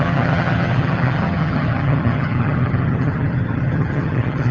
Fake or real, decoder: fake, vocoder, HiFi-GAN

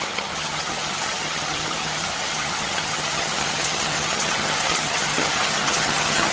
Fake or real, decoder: fake, vocoder, HiFi-GAN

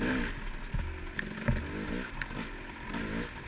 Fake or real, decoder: real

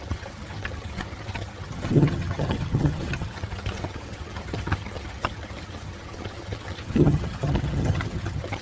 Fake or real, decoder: fake, vocoder, HiFi-GAN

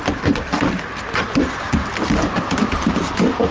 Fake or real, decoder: real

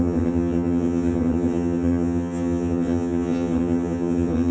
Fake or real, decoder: fake, vocoder, HiFi-GAN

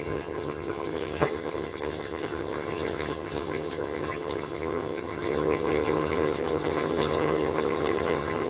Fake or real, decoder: fake, vocoder, HiFi-GAN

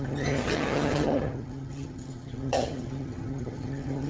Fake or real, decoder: fake, vocoder, HiFi-GAN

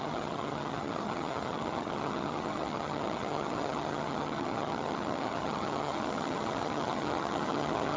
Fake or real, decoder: fake, vocoder, HiFi-GAN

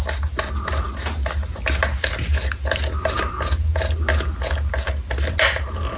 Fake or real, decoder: real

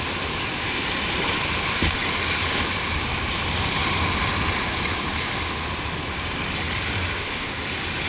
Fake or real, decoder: real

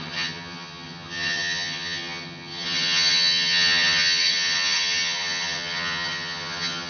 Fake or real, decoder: fake, vocoder, HiFi-GAN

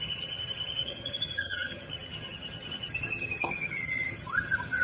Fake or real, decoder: fake, vocoder, HiFi-GAN